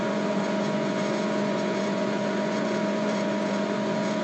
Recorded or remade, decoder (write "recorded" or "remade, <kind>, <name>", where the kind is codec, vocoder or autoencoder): remade, vocoder, Vocos